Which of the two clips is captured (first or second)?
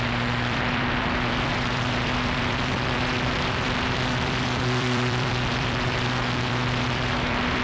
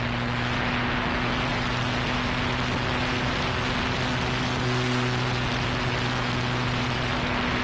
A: second